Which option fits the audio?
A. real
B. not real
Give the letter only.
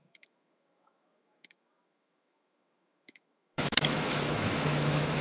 B